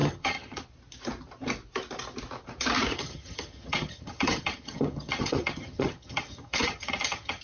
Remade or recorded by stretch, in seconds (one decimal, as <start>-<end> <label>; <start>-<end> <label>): 0.0-0.6 remade; 0.6-2.9 recorded; 2.9-7.4 remade